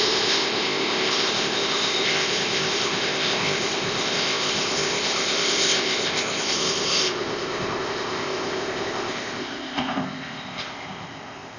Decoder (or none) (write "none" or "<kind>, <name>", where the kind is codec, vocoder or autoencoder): codec, ZipCodec